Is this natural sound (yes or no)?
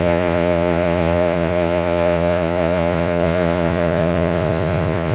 no